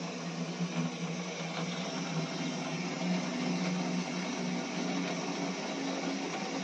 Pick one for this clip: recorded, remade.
recorded